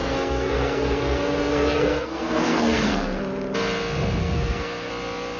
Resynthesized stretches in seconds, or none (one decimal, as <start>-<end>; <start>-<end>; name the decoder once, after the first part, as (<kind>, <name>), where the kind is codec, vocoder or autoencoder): 0.0-3.2 (codec, SNAC); 4.2-4.9